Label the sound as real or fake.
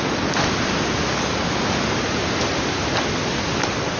real